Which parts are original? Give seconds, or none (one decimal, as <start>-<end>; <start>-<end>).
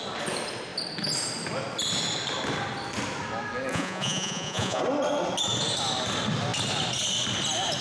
0.0-3.7; 4.8-7.8